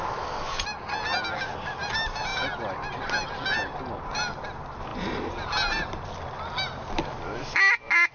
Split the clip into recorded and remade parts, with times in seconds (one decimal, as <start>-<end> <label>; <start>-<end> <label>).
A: 0.0-4.9 recorded; 4.9-6.1 remade; 6.1-8.1 recorded